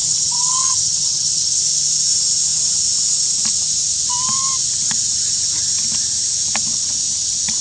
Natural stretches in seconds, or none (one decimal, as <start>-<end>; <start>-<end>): 1.6-7.6